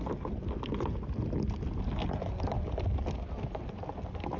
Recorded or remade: recorded